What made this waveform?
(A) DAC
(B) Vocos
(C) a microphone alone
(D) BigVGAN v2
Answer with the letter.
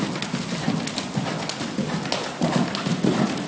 C